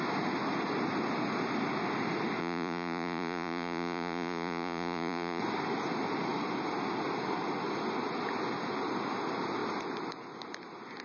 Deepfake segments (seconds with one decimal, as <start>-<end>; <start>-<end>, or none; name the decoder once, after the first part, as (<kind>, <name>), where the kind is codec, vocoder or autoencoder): 2.4-5.4 (vocoder, Vocos)

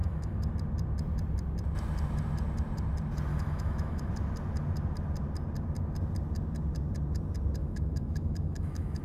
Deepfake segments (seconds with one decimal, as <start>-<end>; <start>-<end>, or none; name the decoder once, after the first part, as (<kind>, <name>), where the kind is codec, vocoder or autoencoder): 0.0-0.5 (autoencoder, DAC-VAE); 3.3-4.1; 7.6-9.0

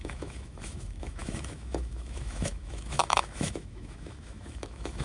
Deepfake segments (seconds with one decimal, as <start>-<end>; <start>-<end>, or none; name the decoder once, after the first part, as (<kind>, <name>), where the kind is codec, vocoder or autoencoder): 0.0-5.0 (autoencoder, DAC-VAE)

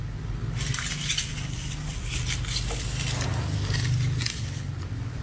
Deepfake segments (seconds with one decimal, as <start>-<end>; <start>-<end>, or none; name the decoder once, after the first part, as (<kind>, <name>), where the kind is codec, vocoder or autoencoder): none

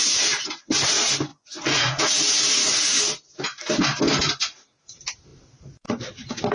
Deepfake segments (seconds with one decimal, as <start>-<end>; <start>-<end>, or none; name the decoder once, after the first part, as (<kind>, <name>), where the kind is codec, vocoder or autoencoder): 1.3-2.0 (vocoder, Vocos)

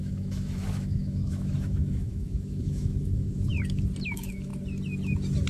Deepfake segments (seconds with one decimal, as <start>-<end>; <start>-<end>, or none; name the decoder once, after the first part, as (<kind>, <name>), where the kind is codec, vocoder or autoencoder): 0.0-3.5 (autoencoder, DAC-VAE); 4.1-4.5